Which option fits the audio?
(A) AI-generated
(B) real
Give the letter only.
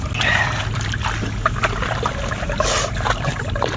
B